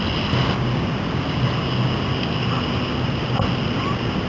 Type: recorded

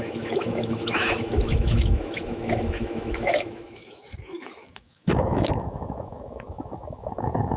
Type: remade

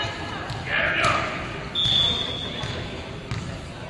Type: recorded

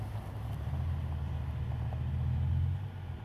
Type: recorded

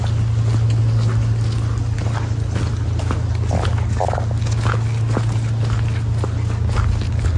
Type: recorded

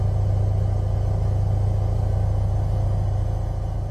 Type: recorded